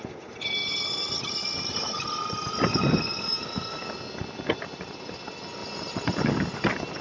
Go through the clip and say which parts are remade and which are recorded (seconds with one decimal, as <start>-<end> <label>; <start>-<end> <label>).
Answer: 0.0-1.1 recorded; 1.1-4.0 remade; 4.0-5.6 recorded; 5.6-6.3 remade; 6.3-7.0 recorded